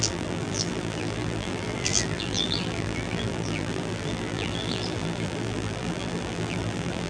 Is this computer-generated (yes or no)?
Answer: yes